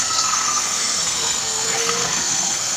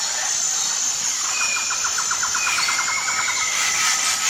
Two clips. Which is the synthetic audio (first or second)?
first